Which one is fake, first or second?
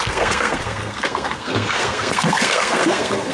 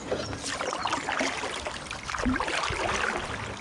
first